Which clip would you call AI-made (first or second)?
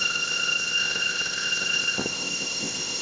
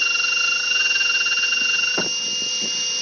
first